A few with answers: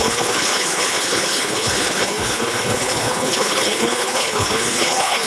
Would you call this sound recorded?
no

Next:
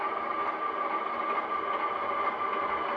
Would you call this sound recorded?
yes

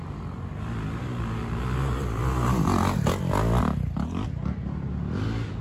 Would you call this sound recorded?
yes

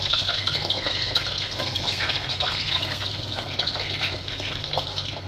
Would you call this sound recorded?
no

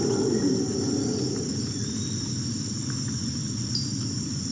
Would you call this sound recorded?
yes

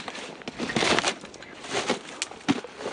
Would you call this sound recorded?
yes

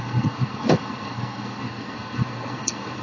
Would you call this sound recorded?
no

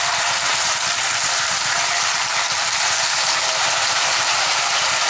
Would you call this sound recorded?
no